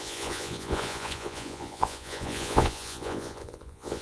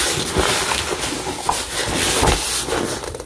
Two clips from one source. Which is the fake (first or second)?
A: first